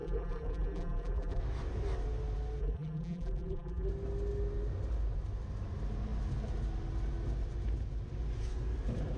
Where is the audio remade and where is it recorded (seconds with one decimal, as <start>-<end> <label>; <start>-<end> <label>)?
0.0-1.4 remade; 1.4-2.6 recorded; 2.6-3.9 remade; 3.9-9.2 recorded

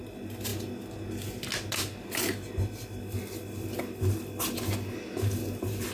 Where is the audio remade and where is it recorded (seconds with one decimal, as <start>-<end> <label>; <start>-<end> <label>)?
0.0-5.9 recorded

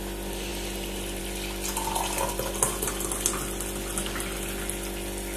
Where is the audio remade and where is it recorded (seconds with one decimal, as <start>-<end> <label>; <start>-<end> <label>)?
0.0-5.4 recorded

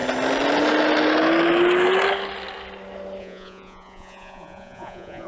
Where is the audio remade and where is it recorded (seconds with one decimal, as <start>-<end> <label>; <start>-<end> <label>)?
0.0-3.2 recorded; 3.2-5.3 remade

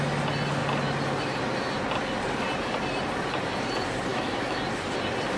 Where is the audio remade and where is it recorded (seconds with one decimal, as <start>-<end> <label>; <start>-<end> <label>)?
0.0-4.1 recorded; 4.1-4.6 remade; 4.6-5.4 recorded

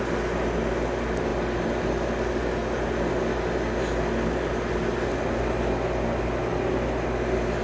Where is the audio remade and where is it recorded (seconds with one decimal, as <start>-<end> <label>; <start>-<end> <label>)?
0.0-7.6 recorded

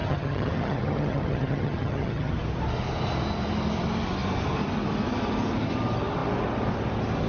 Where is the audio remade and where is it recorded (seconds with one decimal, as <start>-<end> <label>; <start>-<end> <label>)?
0.0-2.3 remade; 2.3-7.3 recorded